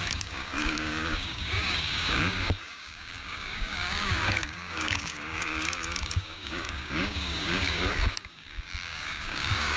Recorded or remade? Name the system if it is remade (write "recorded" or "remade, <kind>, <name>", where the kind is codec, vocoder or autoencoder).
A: remade, codec, DAC